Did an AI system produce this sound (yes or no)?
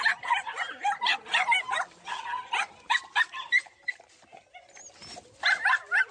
no